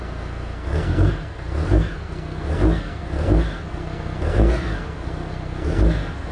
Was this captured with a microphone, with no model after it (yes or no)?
no